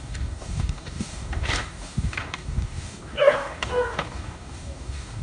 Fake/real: fake